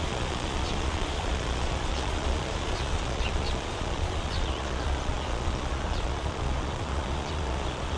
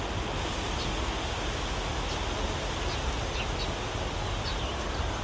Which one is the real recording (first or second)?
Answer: second